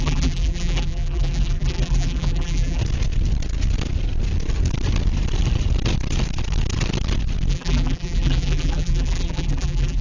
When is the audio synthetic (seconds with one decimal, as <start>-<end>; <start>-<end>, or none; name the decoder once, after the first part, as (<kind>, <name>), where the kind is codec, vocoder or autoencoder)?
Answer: 0.0-2.8 (vocoder, BigVGAN v2); 7.5-10.0